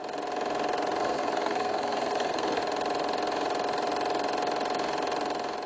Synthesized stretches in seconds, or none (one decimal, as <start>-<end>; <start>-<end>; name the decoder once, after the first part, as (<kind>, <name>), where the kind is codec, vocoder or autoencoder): 1.0-2.6 (codec, SNAC)